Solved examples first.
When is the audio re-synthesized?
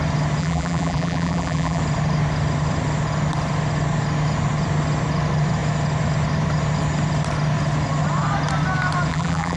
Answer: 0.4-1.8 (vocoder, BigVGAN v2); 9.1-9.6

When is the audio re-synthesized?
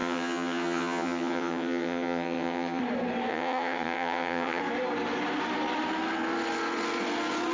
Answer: 0.0-2.8 (vocoder, HiFi-GAN); 3.3-4.6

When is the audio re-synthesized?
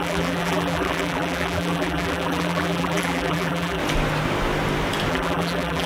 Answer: 0.0-3.8 (vocoder, BigVGAN v2); 5.1-5.9